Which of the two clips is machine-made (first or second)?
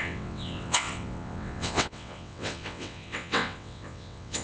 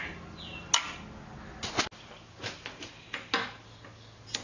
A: first